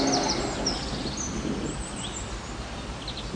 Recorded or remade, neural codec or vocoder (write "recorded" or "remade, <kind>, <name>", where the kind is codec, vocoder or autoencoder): recorded